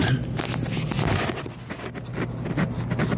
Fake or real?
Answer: real